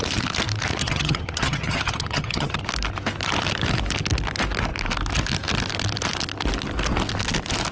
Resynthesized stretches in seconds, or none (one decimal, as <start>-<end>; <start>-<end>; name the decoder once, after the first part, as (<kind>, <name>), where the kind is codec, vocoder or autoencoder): 0.8-2.6 (vocoder, HiFi-GAN)